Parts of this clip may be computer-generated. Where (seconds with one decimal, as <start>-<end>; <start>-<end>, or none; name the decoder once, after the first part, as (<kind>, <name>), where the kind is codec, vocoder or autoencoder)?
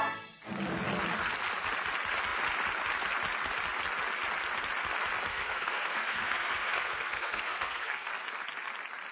5.3-8.1 (codec, SNAC)